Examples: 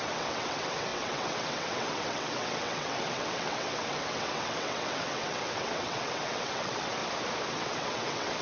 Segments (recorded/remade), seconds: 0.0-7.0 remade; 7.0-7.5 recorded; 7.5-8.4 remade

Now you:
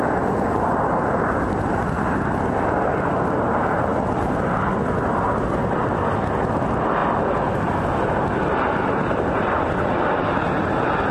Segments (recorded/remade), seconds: 0.0-11.1 recorded

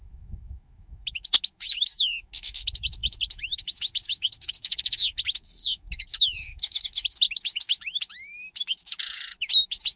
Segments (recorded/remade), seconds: 0.0-10.0 remade

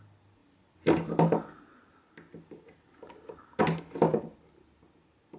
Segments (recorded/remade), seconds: 0.0-5.4 recorded

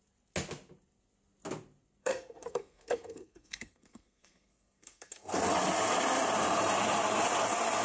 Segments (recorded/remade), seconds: 0.0-2.0 recorded; 2.0-5.4 remade; 5.4-7.8 recorded

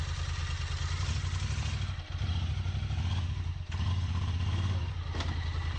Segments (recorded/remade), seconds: 0.0-5.8 recorded